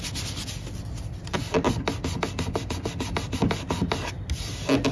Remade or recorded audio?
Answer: recorded